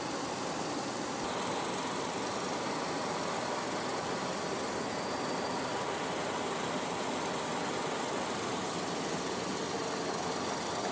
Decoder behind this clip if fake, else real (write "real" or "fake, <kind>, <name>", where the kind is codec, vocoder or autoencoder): real